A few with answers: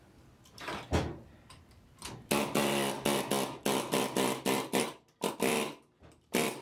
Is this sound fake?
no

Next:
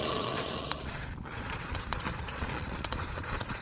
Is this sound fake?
yes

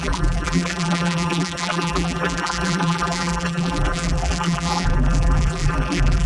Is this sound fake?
yes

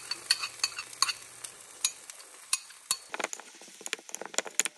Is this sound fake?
no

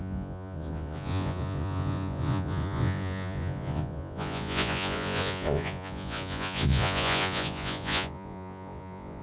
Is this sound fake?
yes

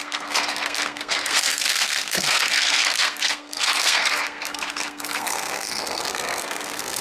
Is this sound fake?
yes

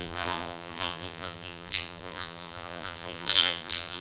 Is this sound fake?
yes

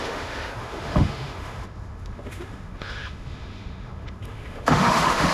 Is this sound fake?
yes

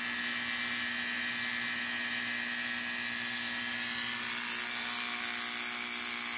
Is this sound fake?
no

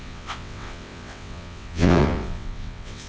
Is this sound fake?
yes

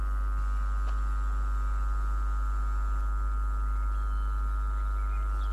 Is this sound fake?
no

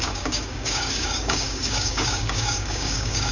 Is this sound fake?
yes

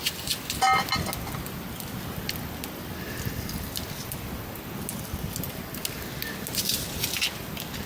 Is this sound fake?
no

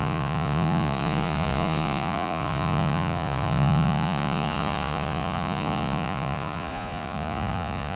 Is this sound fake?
yes